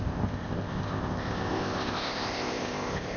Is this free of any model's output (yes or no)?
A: no